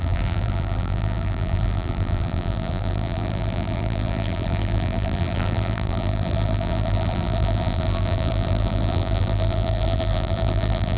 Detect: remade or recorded remade